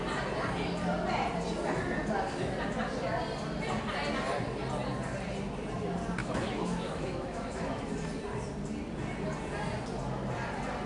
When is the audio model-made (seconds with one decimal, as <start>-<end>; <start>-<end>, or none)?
6.2-7.8